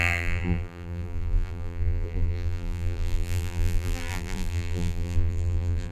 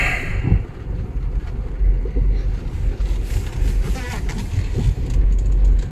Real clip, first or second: second